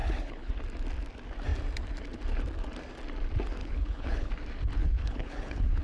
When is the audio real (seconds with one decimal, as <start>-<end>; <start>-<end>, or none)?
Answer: 0.5-3.6; 4.3-4.8